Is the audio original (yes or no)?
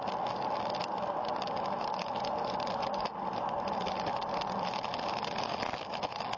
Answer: yes